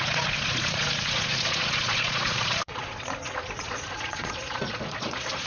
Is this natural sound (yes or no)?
no